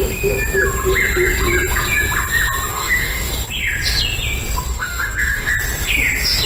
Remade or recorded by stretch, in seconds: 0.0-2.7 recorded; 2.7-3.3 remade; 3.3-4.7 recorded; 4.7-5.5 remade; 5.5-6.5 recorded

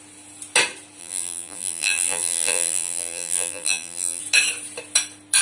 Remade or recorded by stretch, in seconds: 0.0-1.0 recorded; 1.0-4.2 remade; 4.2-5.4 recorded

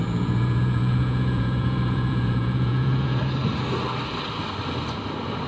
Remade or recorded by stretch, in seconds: 0.0-3.2 remade; 3.2-5.5 recorded

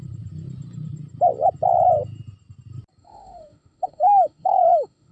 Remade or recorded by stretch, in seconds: 0.0-3.0 recorded; 3.0-5.1 remade

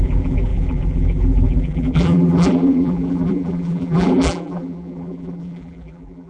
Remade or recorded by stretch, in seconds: 0.0-6.3 remade

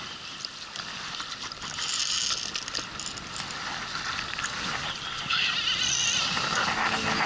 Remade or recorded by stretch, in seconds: 0.0-7.3 recorded

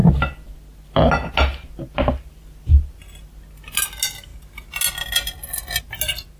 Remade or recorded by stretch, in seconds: 0.0-6.4 recorded